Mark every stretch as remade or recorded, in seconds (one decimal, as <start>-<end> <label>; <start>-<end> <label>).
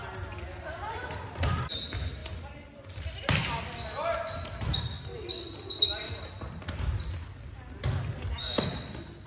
0.0-9.3 recorded